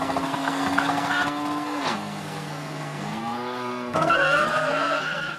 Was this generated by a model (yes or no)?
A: yes